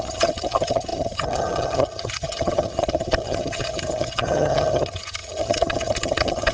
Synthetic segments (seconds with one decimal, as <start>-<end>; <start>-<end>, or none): 0.0-6.5